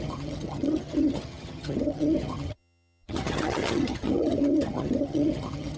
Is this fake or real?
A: fake